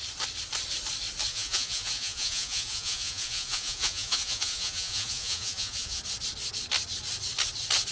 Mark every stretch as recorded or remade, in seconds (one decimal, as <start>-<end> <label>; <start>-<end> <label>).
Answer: 0.0-1.3 recorded; 1.3-6.0 remade; 6.0-7.9 recorded